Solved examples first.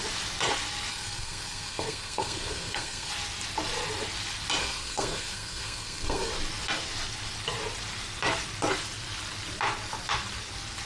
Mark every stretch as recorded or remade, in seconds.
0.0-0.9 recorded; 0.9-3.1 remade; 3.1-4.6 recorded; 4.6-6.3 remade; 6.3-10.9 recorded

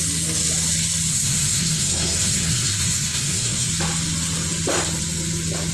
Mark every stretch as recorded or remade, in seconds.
0.0-1.1 recorded; 1.1-3.7 remade; 3.7-5.7 recorded

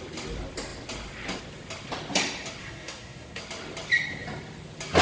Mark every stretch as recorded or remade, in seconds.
0.0-2.6 recorded; 2.6-3.4 remade; 3.4-5.0 recorded

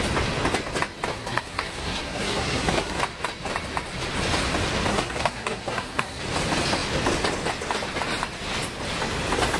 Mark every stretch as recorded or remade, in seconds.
0.0-1.1 recorded; 1.1-3.0 remade; 3.0-4.9 recorded; 4.9-6.2 remade; 6.2-9.6 recorded

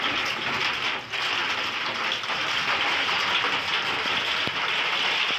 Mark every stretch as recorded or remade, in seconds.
0.0-5.4 recorded

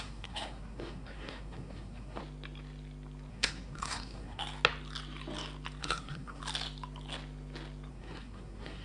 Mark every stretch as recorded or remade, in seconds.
0.0-2.2 remade; 2.2-3.3 recorded; 3.3-4.4 remade; 4.4-5.8 recorded; 5.8-6.4 remade; 6.4-7.9 recorded; 7.9-8.8 remade

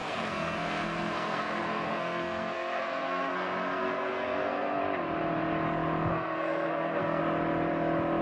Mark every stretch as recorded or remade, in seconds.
0.0-4.8 remade; 4.8-6.1 recorded; 6.1-7.2 remade; 7.2-8.2 recorded